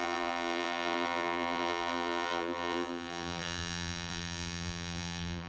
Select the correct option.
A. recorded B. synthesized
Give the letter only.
B